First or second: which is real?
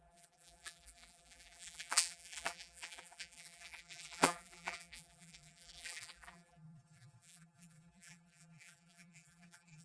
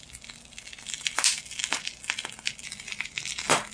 second